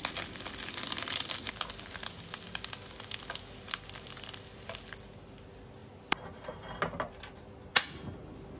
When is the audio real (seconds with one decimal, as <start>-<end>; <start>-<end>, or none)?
0.0-8.6